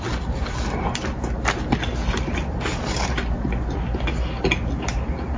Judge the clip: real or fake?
real